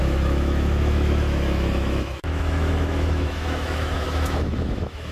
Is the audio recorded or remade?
remade